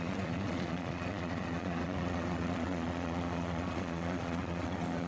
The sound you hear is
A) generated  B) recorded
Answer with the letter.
A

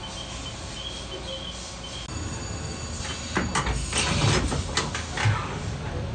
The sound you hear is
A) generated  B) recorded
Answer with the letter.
B